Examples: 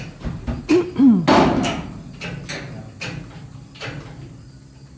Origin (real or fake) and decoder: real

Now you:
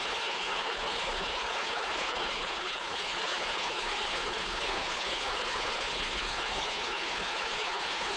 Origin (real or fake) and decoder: fake, codec, HILCodec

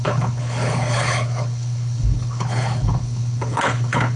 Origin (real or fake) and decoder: fake, codec, HILCodec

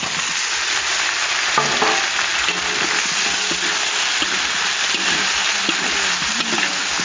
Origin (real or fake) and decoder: real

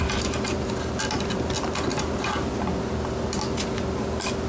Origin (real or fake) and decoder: real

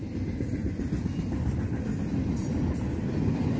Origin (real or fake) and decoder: real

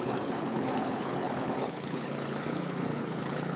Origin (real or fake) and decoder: fake, codec, HILCodec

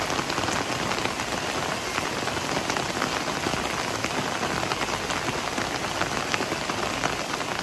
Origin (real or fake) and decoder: real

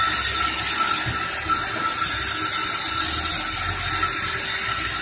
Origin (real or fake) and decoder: real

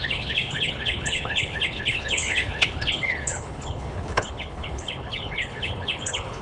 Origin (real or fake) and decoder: fake, codec, HILCodec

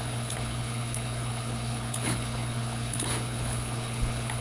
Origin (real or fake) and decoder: fake, codec, HILCodec